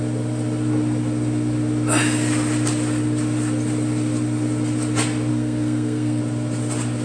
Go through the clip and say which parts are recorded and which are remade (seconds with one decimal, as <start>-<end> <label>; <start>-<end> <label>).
0.0-5.3 recorded; 5.3-6.2 remade; 6.2-7.0 recorded